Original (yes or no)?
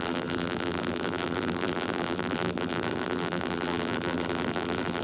no